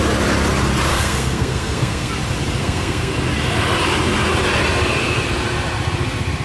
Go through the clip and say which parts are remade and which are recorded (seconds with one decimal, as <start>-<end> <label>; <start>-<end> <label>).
0.0-0.9 recorded; 0.9-2.1 remade; 2.1-2.6 recorded; 2.6-3.1 remade; 3.1-6.4 recorded

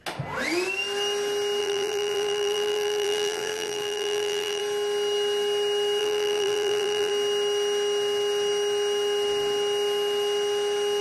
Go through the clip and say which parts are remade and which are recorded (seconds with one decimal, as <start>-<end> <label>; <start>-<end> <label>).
0.0-1.6 recorded; 1.6-4.6 remade; 4.6-6.0 recorded; 6.0-7.1 remade; 7.1-11.0 recorded

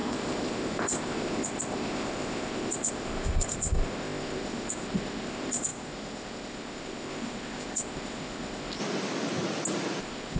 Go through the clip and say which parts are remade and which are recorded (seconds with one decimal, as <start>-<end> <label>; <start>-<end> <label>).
0.0-8.8 remade; 8.8-10.0 recorded; 10.0-10.4 remade